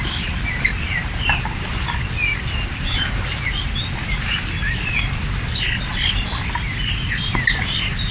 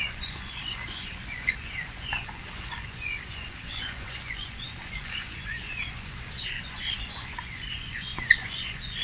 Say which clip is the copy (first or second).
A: second